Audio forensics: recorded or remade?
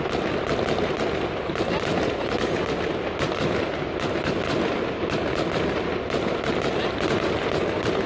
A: recorded